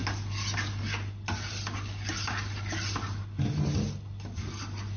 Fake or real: real